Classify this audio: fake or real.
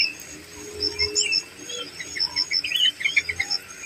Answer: real